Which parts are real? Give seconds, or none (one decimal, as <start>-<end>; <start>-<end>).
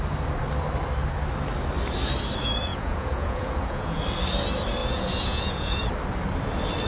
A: 0.0-2.7; 4.0-4.8; 5.8-6.9